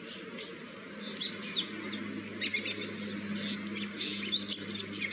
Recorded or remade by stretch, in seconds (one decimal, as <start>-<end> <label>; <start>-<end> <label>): 0.0-5.1 recorded